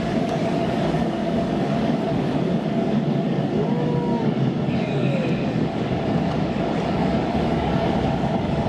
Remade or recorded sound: remade